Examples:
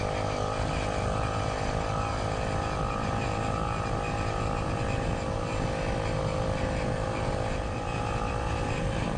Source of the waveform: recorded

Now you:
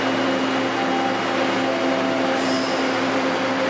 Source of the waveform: recorded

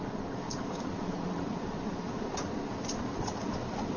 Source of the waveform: remade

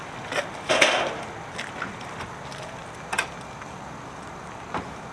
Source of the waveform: recorded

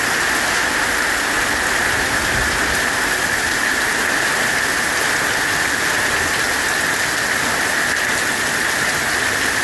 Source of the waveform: recorded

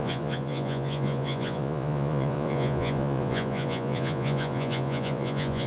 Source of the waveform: remade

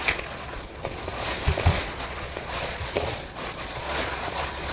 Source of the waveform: remade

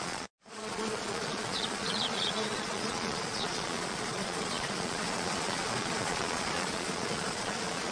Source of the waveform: remade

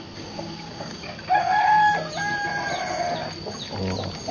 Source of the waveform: recorded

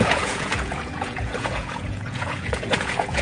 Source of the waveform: remade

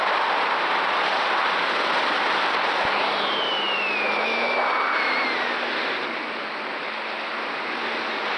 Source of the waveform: recorded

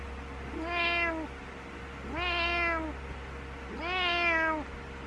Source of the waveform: recorded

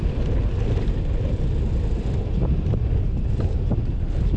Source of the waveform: recorded